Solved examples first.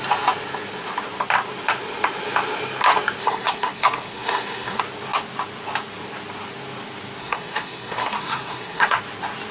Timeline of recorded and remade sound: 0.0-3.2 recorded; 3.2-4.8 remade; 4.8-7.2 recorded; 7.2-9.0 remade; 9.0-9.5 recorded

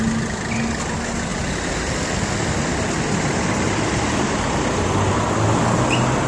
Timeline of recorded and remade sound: 0.0-1.3 recorded; 1.3-5.1 remade; 5.1-6.3 recorded

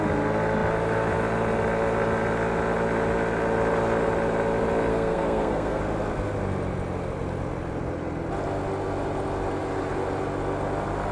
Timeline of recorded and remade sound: 0.0-4.9 recorded; 4.9-5.8 remade; 5.8-11.1 recorded